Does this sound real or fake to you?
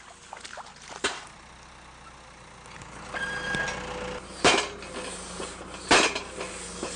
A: real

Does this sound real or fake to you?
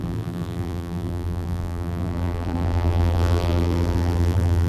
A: fake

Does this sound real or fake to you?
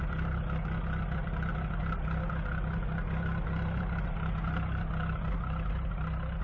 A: real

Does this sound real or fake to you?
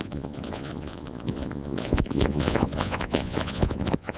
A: fake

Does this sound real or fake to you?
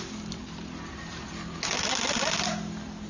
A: real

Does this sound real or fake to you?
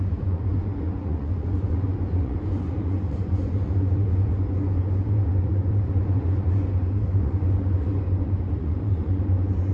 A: fake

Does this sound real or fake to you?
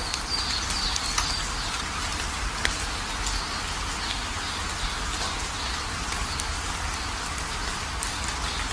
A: real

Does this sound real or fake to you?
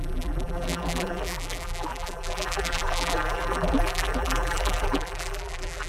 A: fake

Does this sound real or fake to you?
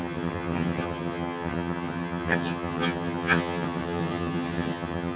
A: fake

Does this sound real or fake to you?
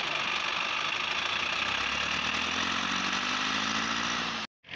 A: real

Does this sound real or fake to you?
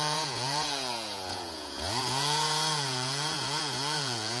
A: fake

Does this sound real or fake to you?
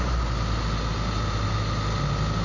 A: real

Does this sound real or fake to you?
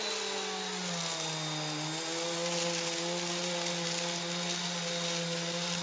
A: real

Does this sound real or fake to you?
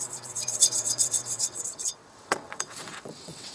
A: fake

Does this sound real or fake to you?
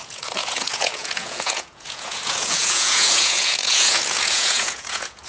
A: fake